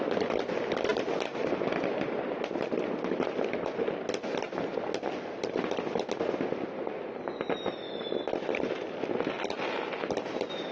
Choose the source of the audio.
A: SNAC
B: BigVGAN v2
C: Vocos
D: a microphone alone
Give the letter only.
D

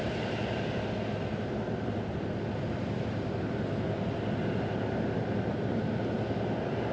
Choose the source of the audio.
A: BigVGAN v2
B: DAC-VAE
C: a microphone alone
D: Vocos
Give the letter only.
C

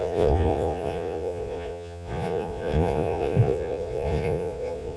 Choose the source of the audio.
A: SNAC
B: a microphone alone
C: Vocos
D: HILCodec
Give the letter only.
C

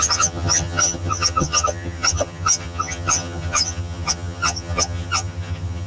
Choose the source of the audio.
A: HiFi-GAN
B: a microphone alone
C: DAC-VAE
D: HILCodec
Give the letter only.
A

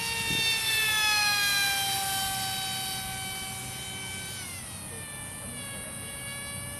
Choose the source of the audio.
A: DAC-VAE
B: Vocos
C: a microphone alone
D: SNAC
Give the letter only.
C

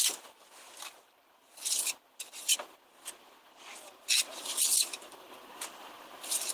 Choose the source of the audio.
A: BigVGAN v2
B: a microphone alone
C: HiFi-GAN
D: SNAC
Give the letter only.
B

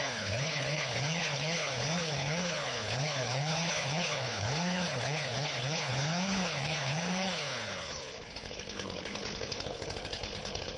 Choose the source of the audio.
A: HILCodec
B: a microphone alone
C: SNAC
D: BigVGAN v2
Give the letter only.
A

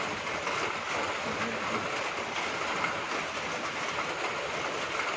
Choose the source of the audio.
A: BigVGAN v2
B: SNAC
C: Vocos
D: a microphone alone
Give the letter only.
D